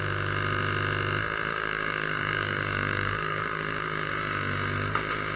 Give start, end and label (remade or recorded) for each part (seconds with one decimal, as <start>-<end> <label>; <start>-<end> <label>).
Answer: 0.0-1.5 recorded; 1.5-4.1 remade; 4.1-5.4 recorded